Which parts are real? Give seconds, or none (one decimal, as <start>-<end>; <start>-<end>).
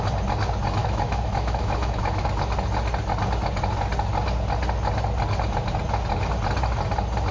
0.0-0.8; 2.3-7.3